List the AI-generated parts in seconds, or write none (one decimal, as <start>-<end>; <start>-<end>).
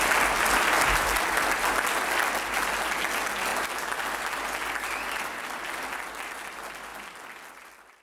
none